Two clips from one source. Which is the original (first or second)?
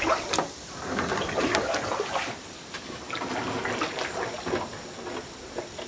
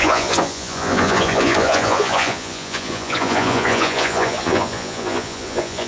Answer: first